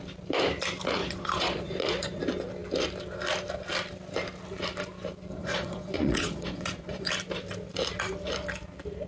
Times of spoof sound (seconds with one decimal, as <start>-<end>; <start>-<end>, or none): 1.0-2.2; 5.4-7.1